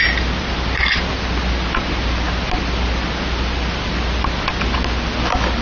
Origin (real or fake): real